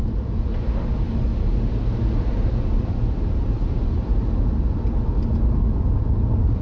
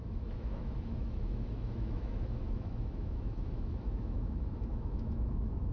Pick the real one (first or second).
first